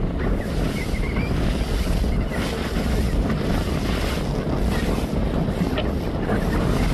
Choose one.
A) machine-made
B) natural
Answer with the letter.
B